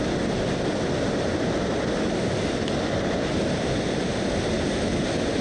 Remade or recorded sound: recorded